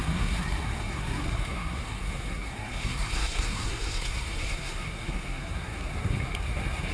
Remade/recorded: remade